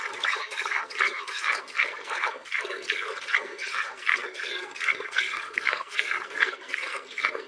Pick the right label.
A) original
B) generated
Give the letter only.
B